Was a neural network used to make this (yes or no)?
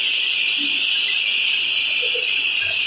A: no